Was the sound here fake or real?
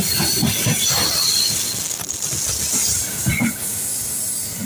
real